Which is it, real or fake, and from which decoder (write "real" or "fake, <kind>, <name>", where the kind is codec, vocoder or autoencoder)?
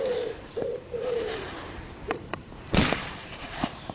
fake, vocoder, BigVGAN v2